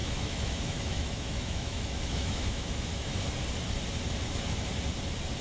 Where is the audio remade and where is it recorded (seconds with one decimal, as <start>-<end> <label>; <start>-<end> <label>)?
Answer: 0.0-3.2 remade; 3.2-5.4 recorded